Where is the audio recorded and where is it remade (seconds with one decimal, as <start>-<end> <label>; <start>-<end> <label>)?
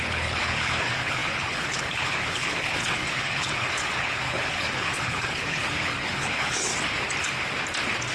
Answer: 0.0-6.7 remade; 6.7-8.1 recorded